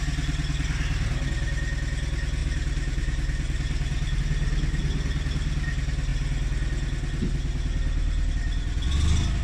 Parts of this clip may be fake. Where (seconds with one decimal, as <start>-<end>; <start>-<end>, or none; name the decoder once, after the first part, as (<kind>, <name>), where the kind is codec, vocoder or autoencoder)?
2.4-4.2 (vocoder, BigVGAN v2)